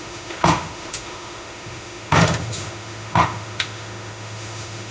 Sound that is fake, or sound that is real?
fake